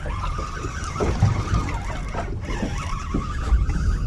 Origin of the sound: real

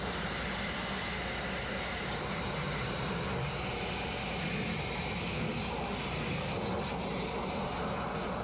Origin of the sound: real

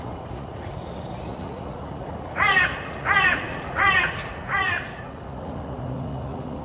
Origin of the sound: fake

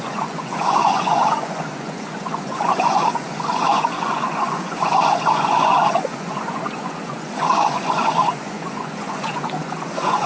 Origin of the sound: fake